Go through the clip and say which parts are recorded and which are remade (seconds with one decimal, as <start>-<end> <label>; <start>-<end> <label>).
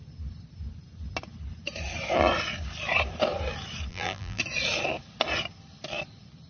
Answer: 0.0-3.9 recorded; 3.9-4.4 remade; 4.4-6.5 recorded